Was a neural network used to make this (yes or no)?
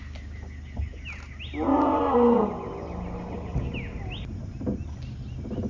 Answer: no